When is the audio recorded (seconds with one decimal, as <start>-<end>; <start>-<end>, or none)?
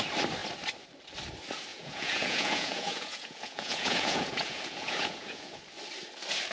0.0-1.7; 5.6-6.5